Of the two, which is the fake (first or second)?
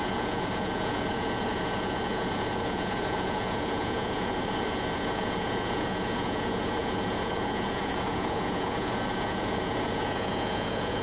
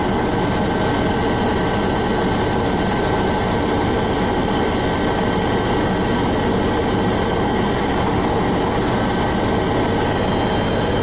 first